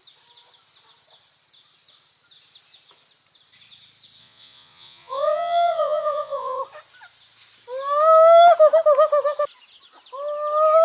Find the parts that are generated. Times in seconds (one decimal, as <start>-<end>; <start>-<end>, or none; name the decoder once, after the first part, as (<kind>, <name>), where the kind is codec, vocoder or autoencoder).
4.2-6.6 (vocoder, Vocos)